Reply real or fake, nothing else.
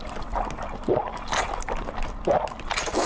real